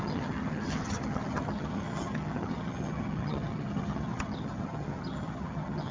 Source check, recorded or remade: remade